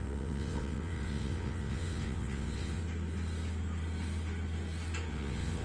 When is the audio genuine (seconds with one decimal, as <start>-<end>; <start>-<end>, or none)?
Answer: 2.8-5.1